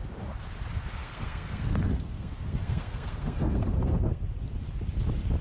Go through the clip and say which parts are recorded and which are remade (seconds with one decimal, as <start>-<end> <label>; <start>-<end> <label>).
0.0-1.0 recorded; 1.0-4.2 remade; 4.2-5.4 recorded